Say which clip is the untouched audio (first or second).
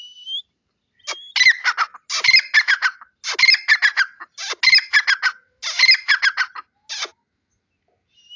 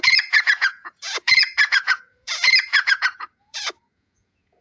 first